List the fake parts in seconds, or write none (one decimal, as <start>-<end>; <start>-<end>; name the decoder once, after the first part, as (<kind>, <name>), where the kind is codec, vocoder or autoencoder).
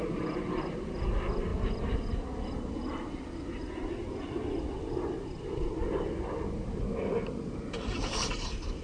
none